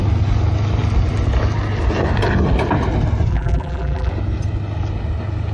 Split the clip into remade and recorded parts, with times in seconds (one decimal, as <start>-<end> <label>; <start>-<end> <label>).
0.0-3.3 recorded; 3.3-4.1 remade; 4.1-5.5 recorded